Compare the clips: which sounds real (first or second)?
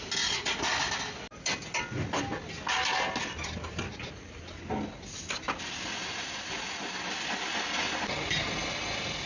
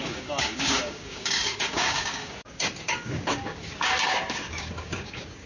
first